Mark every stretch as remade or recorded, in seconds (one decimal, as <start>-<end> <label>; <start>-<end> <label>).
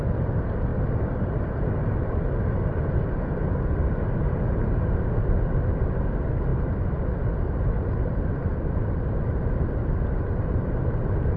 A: 0.0-11.4 recorded